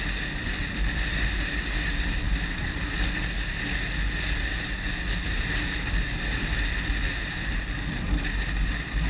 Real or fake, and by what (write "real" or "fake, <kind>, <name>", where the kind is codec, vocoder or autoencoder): real